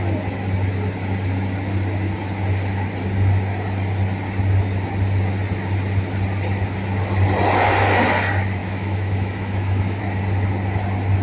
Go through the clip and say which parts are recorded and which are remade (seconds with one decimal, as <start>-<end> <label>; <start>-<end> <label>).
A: 0.0-8.6 recorded; 8.6-10.0 remade; 10.0-11.2 recorded